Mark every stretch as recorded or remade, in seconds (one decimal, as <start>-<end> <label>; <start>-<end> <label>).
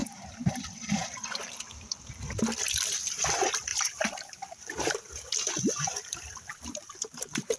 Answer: 0.0-0.6 remade; 0.6-3.7 recorded; 3.7-5.0 remade; 5.0-6.5 recorded; 6.5-7.6 remade